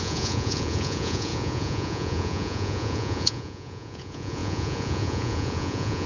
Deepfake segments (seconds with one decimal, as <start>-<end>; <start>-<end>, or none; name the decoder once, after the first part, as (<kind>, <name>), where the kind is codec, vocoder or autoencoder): 0.0-6.1 (vocoder, Vocos)